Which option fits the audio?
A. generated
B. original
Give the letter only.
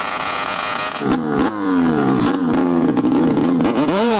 A